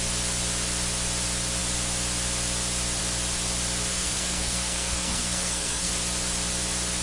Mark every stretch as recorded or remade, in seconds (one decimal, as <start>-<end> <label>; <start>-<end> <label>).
0.0-3.9 recorded; 3.9-5.9 remade; 5.9-7.0 recorded

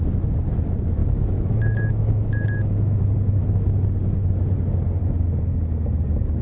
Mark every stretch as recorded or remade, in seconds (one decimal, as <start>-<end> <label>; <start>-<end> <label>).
0.0-1.0 recorded; 1.0-3.0 remade; 3.0-6.4 recorded

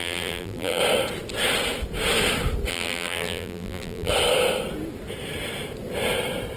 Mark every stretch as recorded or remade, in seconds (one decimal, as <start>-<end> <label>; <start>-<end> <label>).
0.0-0.8 remade; 0.8-2.7 recorded; 2.7-4.1 remade; 4.1-6.6 recorded

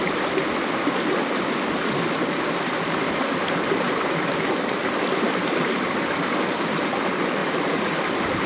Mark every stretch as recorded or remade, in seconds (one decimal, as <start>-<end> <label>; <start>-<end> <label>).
0.0-7.4 recorded; 7.4-8.0 remade; 8.0-8.5 recorded

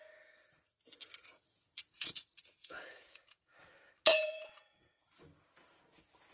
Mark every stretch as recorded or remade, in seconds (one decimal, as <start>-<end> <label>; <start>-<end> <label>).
0.0-1.3 recorded; 1.3-3.5 remade; 3.5-4.1 recorded; 4.1-5.1 remade; 5.1-6.3 recorded

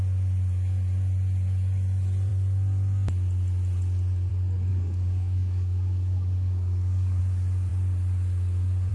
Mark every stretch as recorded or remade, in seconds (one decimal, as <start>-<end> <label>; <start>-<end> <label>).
0.0-4.7 recorded; 4.7-7.2 remade; 7.2-8.9 recorded